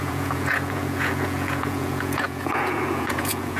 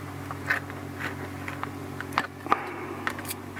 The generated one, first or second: first